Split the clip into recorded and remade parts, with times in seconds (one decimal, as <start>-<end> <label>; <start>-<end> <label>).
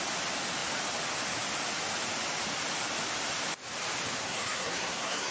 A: 0.0-4.2 recorded; 4.2-5.3 remade